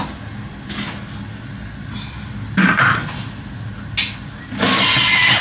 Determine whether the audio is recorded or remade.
recorded